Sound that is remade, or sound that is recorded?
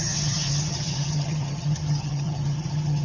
remade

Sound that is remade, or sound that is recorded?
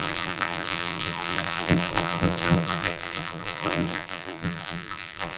remade